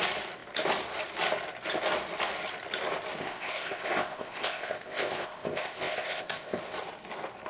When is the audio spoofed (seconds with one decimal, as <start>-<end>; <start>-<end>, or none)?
3.2-6.6